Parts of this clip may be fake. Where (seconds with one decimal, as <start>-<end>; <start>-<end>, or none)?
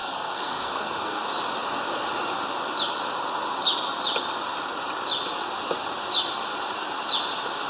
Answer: 0.0-1.2